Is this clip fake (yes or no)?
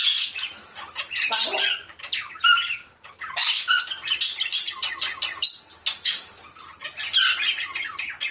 no